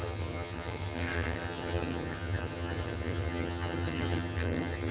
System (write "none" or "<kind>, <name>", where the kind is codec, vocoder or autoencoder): vocoder, HiFi-GAN